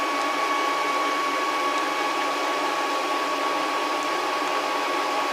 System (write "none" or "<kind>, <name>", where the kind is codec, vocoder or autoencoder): none